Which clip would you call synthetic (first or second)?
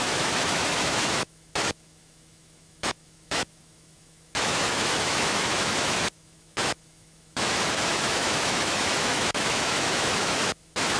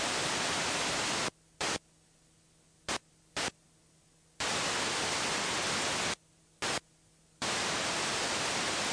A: first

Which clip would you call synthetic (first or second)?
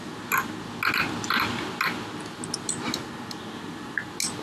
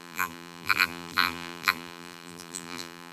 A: second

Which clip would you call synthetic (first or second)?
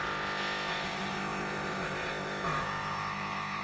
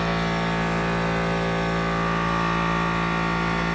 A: first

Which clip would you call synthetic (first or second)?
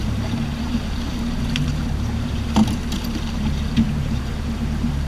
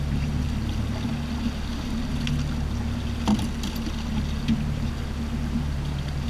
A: first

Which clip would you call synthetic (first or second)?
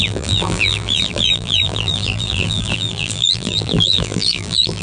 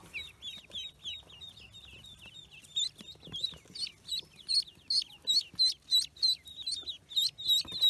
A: first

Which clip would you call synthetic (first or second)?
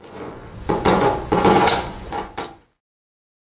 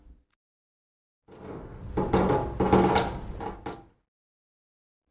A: first